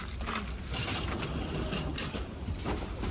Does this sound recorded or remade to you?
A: remade